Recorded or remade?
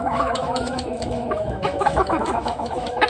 remade